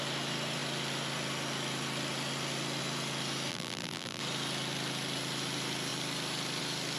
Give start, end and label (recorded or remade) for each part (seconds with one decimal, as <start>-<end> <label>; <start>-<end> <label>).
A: 0.0-3.5 recorded; 3.5-4.2 remade; 4.2-7.0 recorded